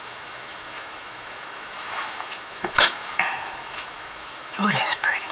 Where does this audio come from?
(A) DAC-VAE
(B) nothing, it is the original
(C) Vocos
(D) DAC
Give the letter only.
A